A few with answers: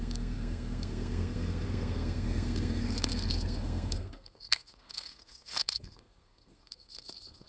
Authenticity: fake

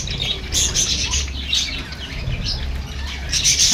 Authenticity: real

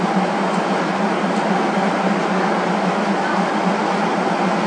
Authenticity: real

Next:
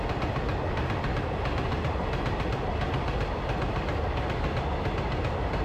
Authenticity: real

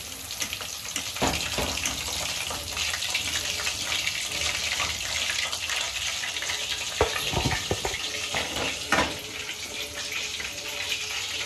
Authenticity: real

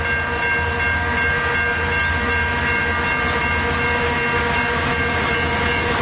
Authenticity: real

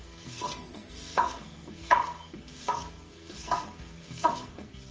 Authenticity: fake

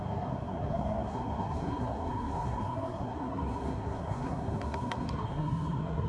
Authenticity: fake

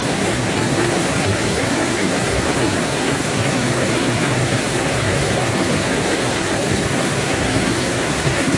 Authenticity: fake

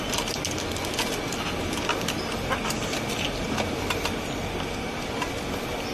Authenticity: real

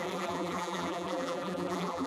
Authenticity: fake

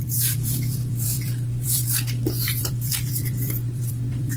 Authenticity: fake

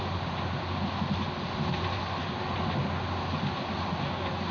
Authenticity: real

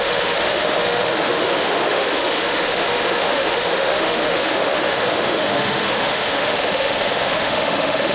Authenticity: fake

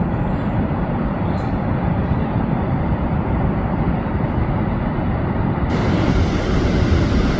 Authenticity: real